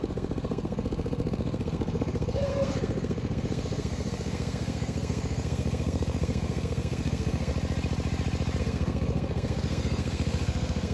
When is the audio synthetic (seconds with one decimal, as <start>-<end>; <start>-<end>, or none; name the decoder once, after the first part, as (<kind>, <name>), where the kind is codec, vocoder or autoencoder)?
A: 0.0-7.5 (codec, SNAC); 8.6-10.9

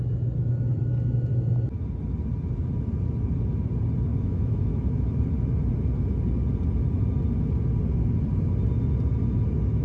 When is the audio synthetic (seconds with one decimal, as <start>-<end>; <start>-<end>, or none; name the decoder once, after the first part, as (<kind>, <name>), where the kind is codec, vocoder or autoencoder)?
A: 4.1-5.2 (autoencoder, DAC-VAE)